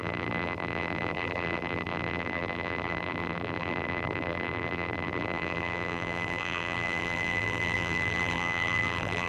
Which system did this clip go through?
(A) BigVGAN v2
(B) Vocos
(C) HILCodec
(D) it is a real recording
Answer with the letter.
A